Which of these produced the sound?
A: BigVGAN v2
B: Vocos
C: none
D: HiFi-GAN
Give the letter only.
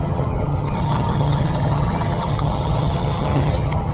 D